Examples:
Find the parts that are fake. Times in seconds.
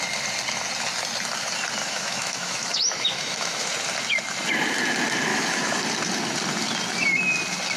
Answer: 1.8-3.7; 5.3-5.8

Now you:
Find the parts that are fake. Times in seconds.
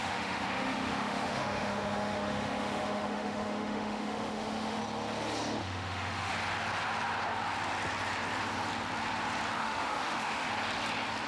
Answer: 0.0-4.8; 5.6-6.3; 9.6-10.5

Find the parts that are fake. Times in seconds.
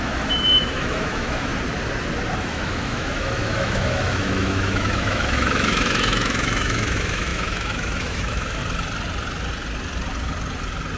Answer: 0.0-1.5; 2.4-8.6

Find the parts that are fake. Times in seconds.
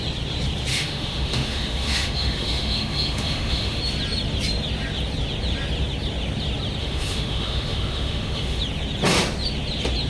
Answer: 0.7-3.8; 6.8-8.6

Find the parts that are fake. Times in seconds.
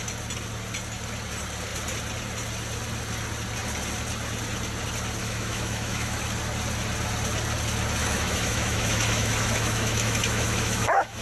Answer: 5.2-6.2; 8.0-11.2